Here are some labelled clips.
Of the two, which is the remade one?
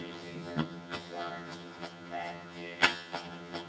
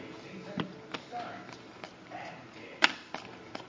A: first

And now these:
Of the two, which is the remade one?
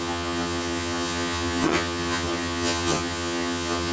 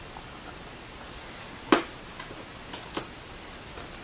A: first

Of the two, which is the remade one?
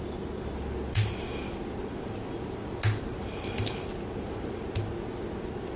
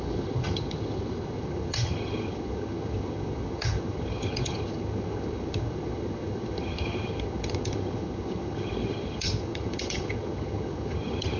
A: second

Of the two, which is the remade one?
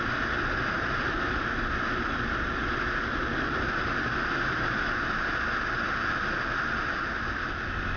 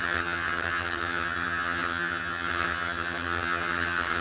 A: second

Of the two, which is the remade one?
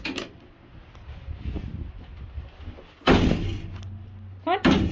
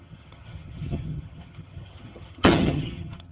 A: second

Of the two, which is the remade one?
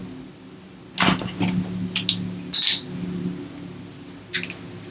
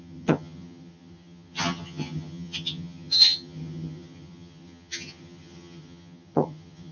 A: second